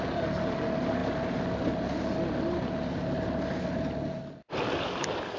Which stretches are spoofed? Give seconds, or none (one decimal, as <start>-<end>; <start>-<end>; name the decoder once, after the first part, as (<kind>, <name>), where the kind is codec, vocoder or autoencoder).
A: none